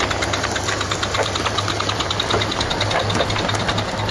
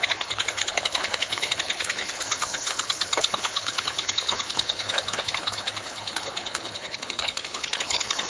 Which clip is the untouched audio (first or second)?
first